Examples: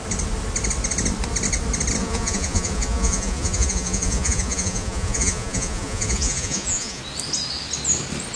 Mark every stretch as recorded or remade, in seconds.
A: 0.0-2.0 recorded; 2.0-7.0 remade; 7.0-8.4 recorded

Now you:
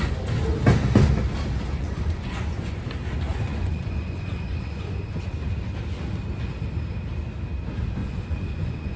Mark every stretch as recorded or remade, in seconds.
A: 0.0-1.8 recorded; 1.8-2.8 remade; 2.8-3.3 recorded; 3.3-5.2 remade; 5.2-8.0 recorded; 8.0-9.0 remade

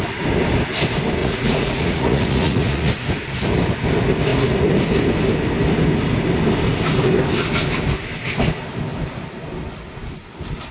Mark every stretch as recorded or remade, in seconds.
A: 0.0-1.2 recorded; 1.2-2.9 remade; 2.9-10.7 recorded

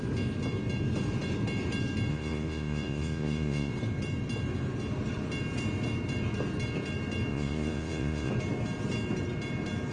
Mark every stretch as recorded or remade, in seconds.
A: 0.0-2.1 recorded; 2.1-3.7 remade; 3.7-7.3 recorded; 7.3-8.3 remade; 8.3-9.9 recorded

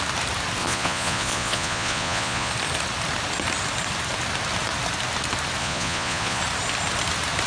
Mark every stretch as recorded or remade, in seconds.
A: 0.0-0.6 recorded; 0.6-2.5 remade; 2.5-5.6 recorded; 5.6-6.4 remade; 6.4-7.5 recorded

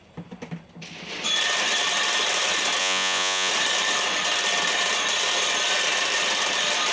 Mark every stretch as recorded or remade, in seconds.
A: 0.0-2.8 recorded; 2.8-3.5 remade; 3.5-6.9 recorded

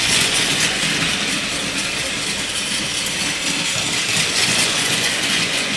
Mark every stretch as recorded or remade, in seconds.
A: 0.0-0.8 remade; 0.8-4.3 recorded; 4.3-5.8 remade